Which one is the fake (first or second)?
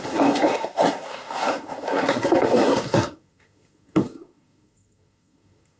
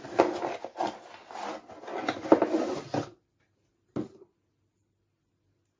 first